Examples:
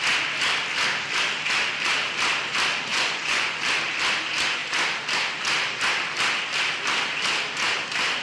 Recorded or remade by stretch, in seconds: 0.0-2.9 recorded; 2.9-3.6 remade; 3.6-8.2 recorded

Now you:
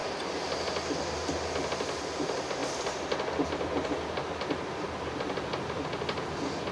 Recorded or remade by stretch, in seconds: 0.0-6.7 recorded

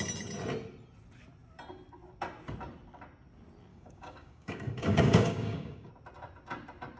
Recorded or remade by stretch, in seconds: 0.0-3.7 recorded; 3.7-5.9 remade; 5.9-7.0 recorded

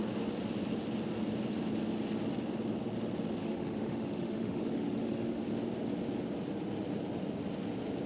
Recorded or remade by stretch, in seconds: 0.0-3.4 recorded; 3.4-5.4 remade; 5.4-8.1 recorded

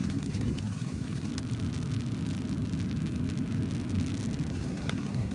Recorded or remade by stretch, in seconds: 0.0-1.3 remade; 1.3-4.5 recorded; 4.5-5.3 remade

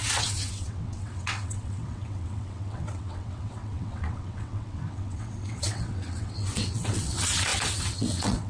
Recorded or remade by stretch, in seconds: 0.0-8.5 remade

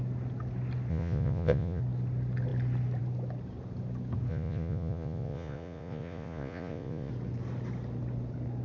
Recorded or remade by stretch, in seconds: 0.0-0.9 recorded; 0.9-1.8 remade; 1.8-4.3 recorded; 4.3-7.1 remade; 7.1-8.6 recorded